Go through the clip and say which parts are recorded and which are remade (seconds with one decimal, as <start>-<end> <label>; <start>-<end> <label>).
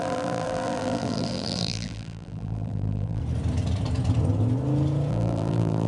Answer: 0.0-3.2 remade; 3.2-5.1 recorded; 5.1-5.9 remade